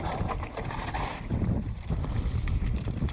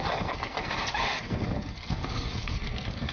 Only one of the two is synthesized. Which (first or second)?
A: second